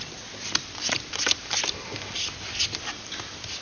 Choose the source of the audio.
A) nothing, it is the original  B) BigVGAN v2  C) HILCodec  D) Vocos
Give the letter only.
A